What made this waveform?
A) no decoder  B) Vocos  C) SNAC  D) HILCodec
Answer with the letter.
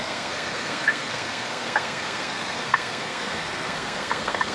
C